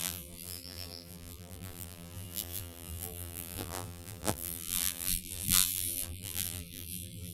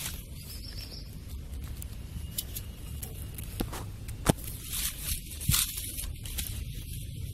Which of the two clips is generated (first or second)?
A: first